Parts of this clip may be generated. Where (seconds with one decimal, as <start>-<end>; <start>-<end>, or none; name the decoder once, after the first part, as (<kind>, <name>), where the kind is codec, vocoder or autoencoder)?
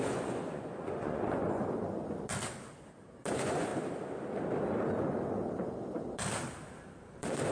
0.0-1.6 (vocoder, Vocos); 3.3-3.7